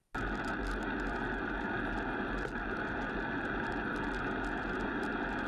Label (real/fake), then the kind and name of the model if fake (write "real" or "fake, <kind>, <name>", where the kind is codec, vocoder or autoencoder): real